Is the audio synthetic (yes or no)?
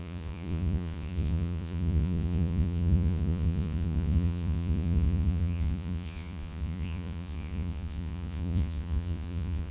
yes